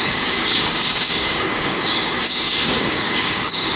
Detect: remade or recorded remade